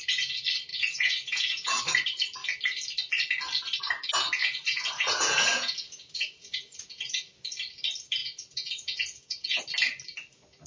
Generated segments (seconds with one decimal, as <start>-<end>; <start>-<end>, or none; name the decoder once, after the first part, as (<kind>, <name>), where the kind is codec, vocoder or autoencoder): 0.7-1.8 (vocoder, Vocos); 4.4-7.3; 8.2-9.6